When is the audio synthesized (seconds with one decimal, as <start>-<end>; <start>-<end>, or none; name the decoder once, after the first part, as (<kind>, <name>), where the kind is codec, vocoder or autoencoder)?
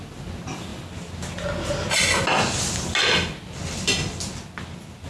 none